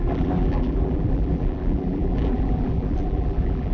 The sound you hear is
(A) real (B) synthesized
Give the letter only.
B